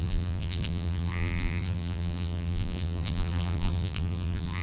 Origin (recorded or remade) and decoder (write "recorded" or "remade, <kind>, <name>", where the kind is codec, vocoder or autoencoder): remade, vocoder, BigVGAN v2